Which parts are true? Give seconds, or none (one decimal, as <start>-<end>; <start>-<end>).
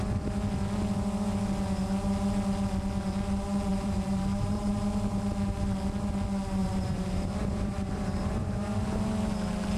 0.0-3.7; 5.2-6.6